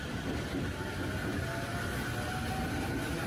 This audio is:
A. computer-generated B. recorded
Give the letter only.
B